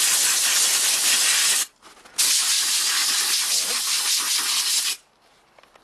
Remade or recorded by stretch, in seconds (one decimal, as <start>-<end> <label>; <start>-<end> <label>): 0.0-5.8 recorded